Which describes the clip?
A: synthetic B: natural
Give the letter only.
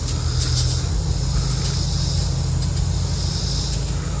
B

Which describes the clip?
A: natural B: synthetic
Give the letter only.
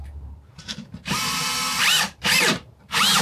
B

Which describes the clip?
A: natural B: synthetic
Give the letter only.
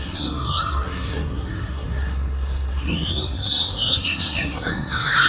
B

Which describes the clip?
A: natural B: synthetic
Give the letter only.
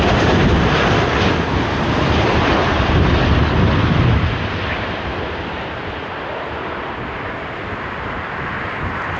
A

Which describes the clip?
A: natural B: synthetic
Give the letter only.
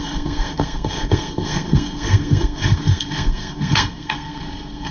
B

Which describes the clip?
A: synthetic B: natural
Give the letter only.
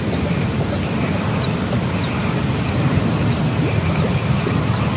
B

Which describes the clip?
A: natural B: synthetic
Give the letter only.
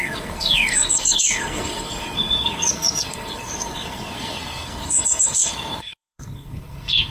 B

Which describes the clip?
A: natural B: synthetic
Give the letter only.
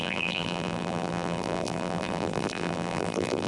B